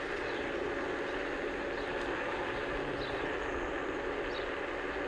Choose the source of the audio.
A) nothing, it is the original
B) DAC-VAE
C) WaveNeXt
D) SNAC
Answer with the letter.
A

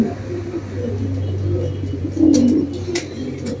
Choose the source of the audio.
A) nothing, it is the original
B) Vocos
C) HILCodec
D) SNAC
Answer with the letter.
A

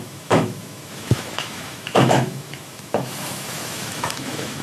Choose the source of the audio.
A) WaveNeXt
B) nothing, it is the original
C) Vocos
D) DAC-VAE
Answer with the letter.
D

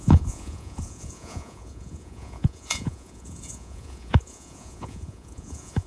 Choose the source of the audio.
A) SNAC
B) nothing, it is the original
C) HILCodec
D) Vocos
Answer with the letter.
D